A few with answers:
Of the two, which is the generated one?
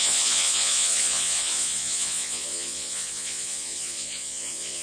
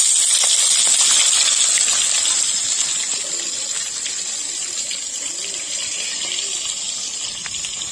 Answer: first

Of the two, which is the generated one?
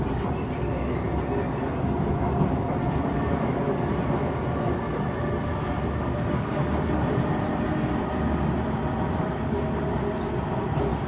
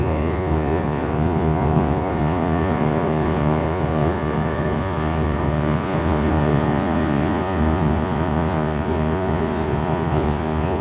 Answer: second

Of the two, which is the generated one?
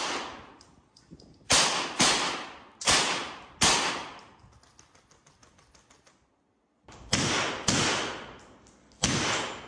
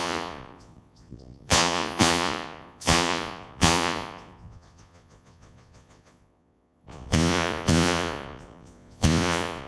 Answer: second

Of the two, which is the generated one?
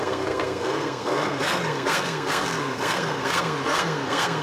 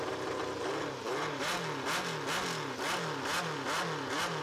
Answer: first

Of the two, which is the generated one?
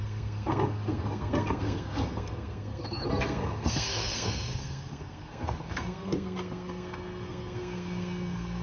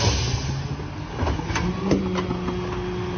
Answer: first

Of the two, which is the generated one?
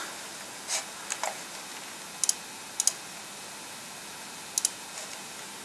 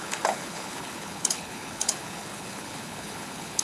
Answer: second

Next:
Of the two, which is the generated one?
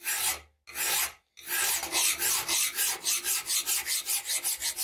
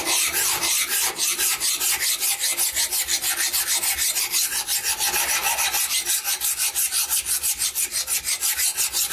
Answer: second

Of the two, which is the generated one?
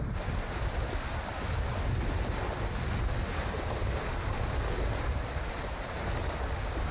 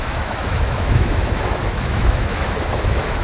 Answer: second